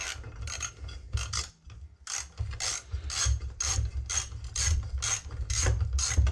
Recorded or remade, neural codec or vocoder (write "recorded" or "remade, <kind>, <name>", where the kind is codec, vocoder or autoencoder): recorded